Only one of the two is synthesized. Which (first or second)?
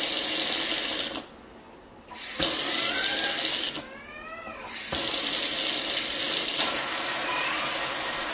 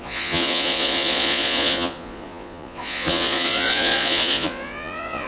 second